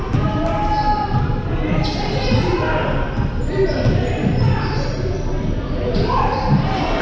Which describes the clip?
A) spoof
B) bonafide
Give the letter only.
B